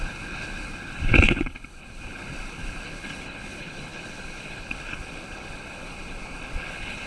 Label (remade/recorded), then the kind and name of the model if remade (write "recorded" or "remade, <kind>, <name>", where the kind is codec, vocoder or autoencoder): remade, codec, HILCodec